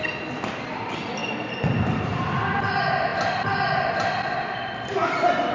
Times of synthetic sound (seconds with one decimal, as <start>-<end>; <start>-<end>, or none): 1.2-2.7; 3.1-3.9